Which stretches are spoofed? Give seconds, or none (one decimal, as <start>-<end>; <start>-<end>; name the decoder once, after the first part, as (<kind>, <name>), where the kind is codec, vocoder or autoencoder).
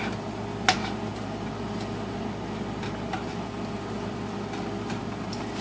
none